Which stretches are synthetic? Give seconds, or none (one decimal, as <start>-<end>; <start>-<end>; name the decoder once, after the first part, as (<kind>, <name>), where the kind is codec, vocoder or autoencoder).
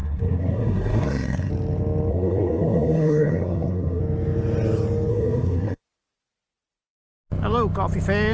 0.0-1.5 (codec, SNAC); 2.1-4.0; 5.1-5.8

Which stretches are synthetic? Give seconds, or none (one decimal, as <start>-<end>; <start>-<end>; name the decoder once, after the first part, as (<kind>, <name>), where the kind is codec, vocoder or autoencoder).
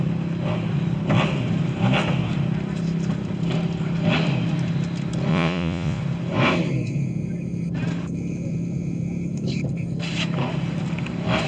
5.3-6.0 (vocoder, Vocos)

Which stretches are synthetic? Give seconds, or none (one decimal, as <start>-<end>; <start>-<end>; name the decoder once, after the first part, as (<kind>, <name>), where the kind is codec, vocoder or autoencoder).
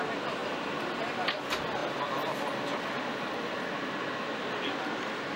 none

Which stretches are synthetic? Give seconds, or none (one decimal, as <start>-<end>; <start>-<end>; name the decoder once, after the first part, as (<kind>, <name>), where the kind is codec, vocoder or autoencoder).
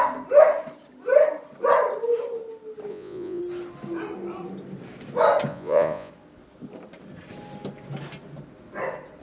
2.9-3.4 (vocoder, Vocos); 5.5-6.1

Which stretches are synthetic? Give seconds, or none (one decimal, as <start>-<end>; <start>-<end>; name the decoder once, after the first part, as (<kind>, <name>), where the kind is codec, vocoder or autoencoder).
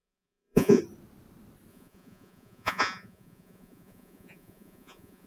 0.0-0.8 (vocoder, Vocos); 1.7-5.3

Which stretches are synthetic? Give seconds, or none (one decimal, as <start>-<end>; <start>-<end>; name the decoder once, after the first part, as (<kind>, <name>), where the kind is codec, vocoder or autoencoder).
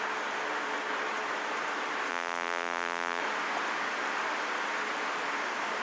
2.1-3.2 (vocoder, BigVGAN v2)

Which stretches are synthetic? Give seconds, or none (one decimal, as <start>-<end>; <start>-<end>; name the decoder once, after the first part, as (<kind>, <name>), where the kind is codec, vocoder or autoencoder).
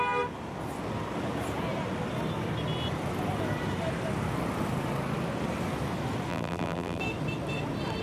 6.3-7.0 (vocoder, BigVGAN v2)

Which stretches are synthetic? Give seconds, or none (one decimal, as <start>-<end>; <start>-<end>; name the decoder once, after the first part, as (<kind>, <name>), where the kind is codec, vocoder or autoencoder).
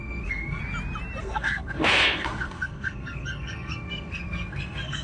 0.0-0.6 (codec, SNAC); 1.2-5.0